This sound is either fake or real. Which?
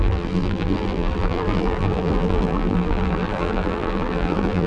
fake